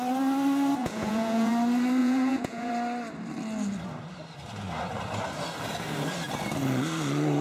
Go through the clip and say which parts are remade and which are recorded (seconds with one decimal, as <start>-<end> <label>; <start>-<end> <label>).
0.0-0.8 recorded; 0.8-1.5 remade; 1.5-2.0 recorded; 2.0-2.7 remade; 2.7-7.4 recorded

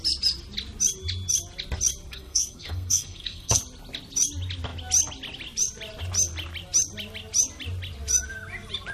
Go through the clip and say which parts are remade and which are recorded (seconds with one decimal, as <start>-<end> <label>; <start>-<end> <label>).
0.0-2.1 recorded; 2.1-3.6 remade; 3.6-8.9 recorded

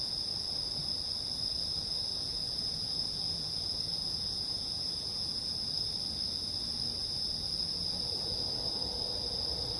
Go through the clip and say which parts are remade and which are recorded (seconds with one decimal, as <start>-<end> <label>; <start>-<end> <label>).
0.0-2.1 recorded; 2.1-5.5 remade; 5.5-9.8 recorded

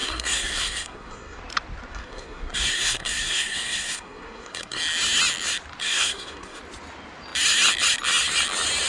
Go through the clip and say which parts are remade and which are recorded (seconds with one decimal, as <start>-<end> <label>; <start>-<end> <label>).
0.0-1.4 remade; 1.4-1.9 recorded; 1.9-4.8 remade; 4.8-5.8 recorded; 5.8-6.6 remade; 6.6-8.9 recorded